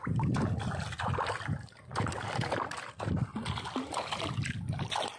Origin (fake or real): real